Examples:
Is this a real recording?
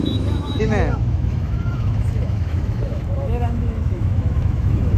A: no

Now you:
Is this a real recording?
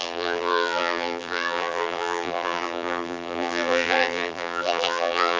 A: no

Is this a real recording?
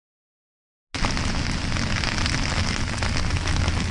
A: yes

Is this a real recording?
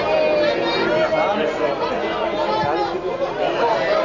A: yes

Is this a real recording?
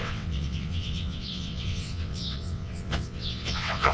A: no